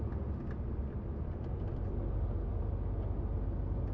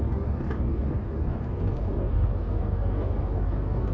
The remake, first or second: second